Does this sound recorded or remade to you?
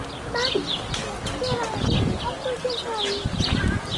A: recorded